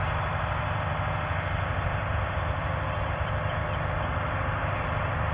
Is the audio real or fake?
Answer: real